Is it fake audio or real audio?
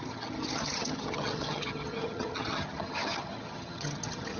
fake